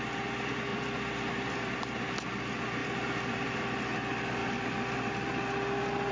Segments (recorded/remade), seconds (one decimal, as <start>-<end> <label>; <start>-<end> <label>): 0.0-0.7 recorded; 0.7-2.0 remade; 2.0-2.8 recorded; 2.8-3.6 remade; 3.6-4.4 recorded; 4.4-5.1 remade; 5.1-6.1 recorded